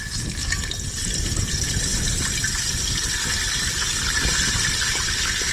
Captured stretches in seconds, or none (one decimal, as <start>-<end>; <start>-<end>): 0.0-5.5